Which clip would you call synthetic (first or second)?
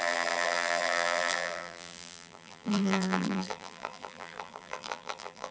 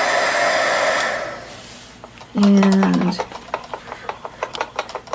first